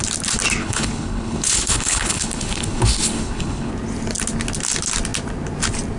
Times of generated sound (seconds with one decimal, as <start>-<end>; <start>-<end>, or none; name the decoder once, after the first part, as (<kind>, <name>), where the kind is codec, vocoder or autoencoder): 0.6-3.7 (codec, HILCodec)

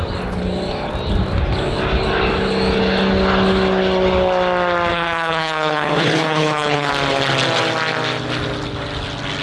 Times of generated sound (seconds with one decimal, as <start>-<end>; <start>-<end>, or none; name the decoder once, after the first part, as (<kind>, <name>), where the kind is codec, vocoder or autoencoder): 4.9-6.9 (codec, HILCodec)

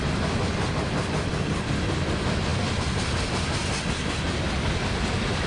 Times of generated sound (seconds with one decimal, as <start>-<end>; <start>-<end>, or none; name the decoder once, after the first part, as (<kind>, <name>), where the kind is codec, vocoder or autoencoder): none

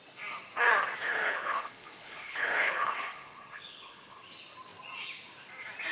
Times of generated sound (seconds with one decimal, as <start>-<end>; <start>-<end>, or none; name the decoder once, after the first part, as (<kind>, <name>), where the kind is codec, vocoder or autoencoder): 1.1-4.2 (codec, HILCodec)

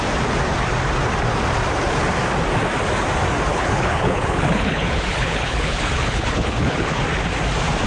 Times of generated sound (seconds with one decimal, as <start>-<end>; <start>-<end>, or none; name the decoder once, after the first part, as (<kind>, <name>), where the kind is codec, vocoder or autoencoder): 3.5-7.0 (codec, HILCodec)

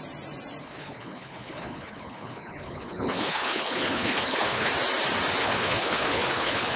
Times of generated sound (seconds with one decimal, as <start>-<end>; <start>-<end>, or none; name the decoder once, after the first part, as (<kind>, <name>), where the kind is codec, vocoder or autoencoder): 0.6-4.7 (codec, HILCodec); 5.4-6.8

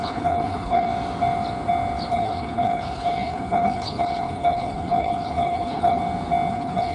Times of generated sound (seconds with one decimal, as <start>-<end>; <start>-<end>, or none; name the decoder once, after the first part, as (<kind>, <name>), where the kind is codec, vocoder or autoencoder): 0.0-0.9 (codec, HILCodec); 2.1-6.0; 6.5-6.9

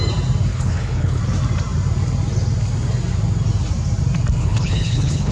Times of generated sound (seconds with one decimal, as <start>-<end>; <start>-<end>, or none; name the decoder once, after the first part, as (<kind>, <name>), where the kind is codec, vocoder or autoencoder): 0.5-1.2 (codec, HILCodec); 4.4-5.3